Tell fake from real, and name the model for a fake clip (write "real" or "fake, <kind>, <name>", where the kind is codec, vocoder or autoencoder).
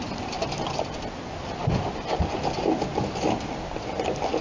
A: real